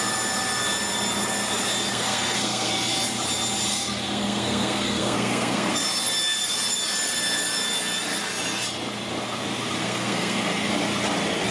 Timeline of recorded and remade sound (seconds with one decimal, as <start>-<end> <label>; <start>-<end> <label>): 0.0-1.9 recorded; 1.9-2.7 remade; 2.7-3.7 recorded; 3.7-5.7 remade; 5.7-9.8 recorded; 9.8-10.7 remade; 10.7-11.5 recorded